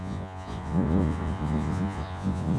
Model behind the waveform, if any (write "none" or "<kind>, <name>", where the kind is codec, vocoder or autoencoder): vocoder, Vocos